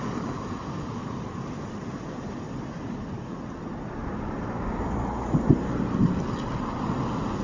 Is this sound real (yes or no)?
yes